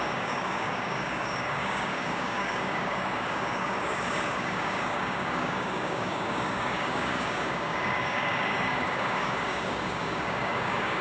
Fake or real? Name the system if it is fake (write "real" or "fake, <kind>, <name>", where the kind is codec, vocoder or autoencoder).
fake, codec, DAC